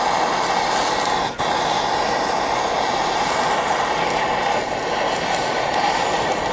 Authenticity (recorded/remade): recorded